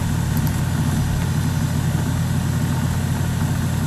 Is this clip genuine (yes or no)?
yes